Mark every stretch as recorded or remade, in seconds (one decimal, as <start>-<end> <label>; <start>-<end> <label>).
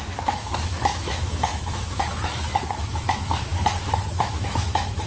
0.0-3.5 remade; 3.5-4.1 recorded; 4.1-5.1 remade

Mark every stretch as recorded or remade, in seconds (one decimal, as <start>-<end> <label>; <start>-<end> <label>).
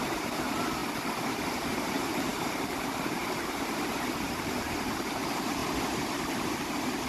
0.0-0.8 remade; 0.8-1.3 recorded; 1.3-5.6 remade; 5.6-6.5 recorded; 6.5-7.1 remade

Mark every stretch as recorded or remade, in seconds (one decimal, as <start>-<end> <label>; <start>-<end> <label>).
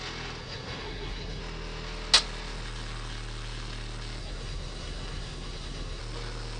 0.0-0.4 recorded; 0.4-1.4 remade; 1.4-4.2 recorded; 4.2-6.0 remade; 6.0-6.6 recorded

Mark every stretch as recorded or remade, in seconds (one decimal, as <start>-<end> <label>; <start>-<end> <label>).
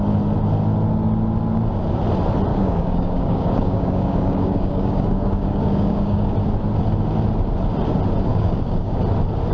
0.0-2.5 recorded; 2.5-6.3 remade; 6.3-8.3 recorded; 8.3-9.0 remade; 9.0-9.5 recorded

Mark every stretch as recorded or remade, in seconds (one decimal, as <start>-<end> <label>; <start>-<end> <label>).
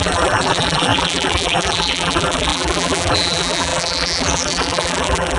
0.0-5.4 remade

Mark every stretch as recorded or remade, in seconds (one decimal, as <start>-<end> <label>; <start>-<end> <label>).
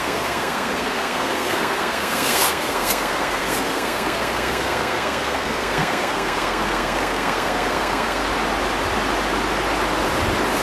0.0-8.2 remade; 8.2-10.6 recorded